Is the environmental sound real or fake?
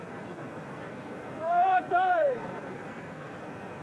fake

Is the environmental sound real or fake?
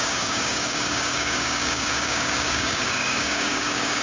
fake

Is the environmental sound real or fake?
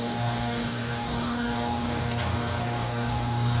fake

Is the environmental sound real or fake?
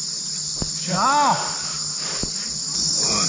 real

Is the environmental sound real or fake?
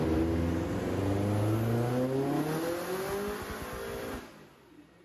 real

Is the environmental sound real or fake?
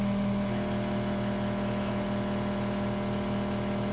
real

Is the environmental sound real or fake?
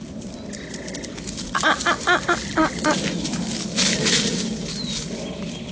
real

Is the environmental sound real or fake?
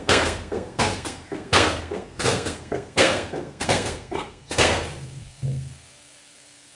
fake